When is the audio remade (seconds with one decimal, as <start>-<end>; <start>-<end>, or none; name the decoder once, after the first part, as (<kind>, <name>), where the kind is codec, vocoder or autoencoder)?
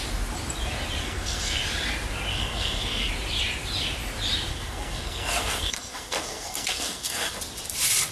1.0-1.6 (codec, SNAC); 2.3-3.1; 4.5-7.4